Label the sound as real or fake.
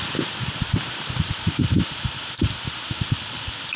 real